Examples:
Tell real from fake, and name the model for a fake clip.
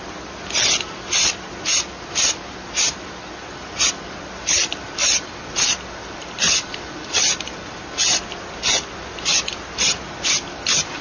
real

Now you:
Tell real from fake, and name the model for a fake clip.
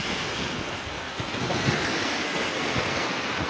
fake, codec, SNAC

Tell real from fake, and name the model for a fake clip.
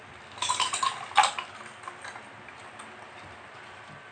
real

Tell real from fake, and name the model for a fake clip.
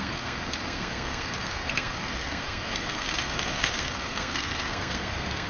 fake, codec, SNAC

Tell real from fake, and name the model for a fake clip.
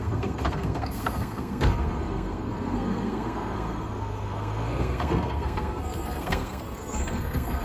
fake, codec, SNAC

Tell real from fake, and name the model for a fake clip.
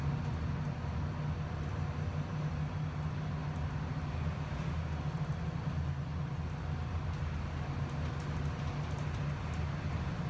real